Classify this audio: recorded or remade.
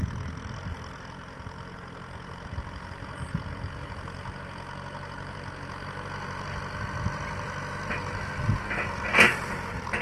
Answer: recorded